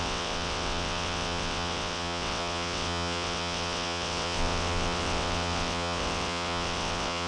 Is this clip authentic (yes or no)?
no